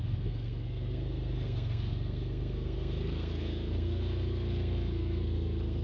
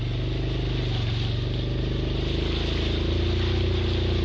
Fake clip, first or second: first